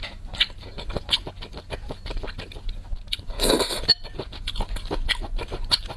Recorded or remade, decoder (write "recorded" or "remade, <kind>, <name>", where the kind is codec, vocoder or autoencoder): recorded